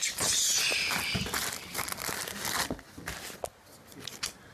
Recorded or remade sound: recorded